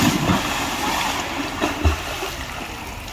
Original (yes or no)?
yes